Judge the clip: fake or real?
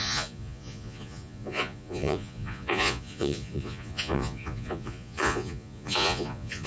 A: fake